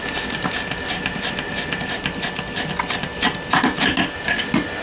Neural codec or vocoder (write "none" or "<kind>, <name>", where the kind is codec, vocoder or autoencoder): none